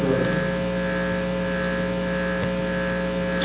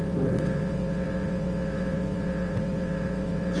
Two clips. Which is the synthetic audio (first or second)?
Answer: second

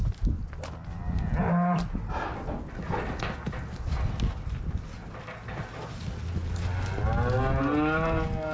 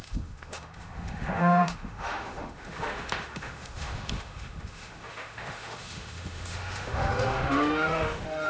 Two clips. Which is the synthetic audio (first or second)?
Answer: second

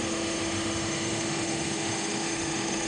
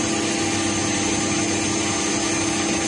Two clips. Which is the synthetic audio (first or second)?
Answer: first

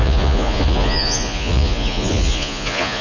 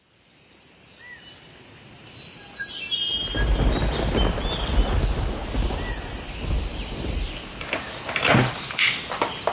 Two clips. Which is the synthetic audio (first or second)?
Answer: first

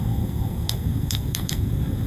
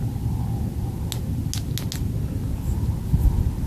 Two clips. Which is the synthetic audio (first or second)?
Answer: first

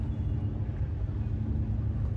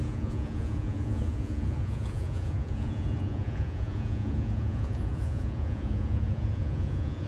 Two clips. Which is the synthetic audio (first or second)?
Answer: second